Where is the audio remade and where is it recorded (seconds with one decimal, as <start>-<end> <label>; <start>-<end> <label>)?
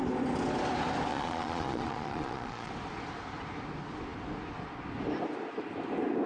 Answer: 0.0-1.1 recorded; 1.1-2.7 remade; 2.7-6.3 recorded